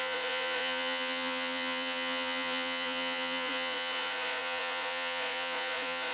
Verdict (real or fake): fake